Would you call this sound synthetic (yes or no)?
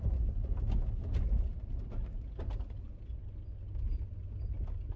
no